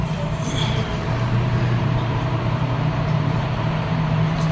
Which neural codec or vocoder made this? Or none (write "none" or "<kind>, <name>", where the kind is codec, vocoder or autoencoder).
vocoder, BigVGAN v2